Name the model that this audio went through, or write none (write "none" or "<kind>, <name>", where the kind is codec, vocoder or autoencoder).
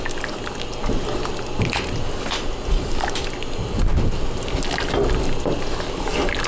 none